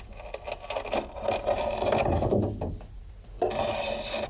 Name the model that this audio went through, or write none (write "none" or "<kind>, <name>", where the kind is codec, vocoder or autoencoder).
none